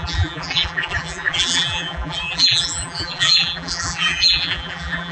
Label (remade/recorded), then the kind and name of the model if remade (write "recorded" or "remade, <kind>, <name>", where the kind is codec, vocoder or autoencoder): remade, vocoder, BigVGAN v2